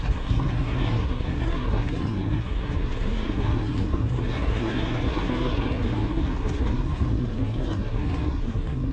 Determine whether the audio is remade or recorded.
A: remade